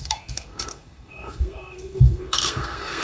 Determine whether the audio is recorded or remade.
remade